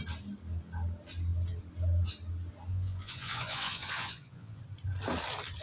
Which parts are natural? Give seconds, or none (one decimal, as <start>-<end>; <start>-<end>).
0.0-2.7; 4.6-5.6